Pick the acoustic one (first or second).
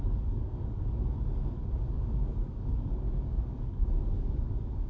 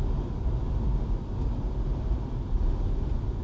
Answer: second